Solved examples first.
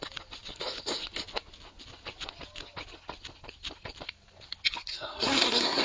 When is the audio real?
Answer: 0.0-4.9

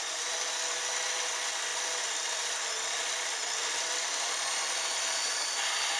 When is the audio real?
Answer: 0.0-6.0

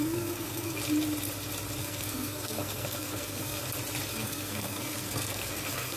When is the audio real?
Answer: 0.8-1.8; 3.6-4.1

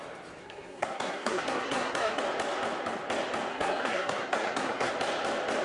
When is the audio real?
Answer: 0.0-0.4; 2.2-3.5; 4.9-5.6

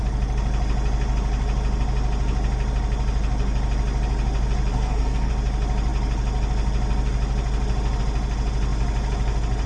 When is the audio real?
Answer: 0.0-4.7; 5.3-9.7

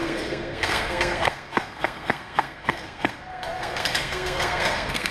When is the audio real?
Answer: none

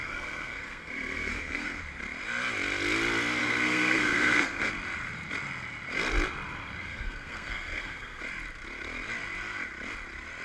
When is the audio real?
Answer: 1.8-3.4; 4.7-6.9; 8.2-10.4